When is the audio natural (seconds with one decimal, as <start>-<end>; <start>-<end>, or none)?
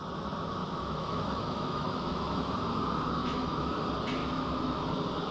0.0-0.6; 2.5-3.2; 3.8-4.2; 4.8-5.3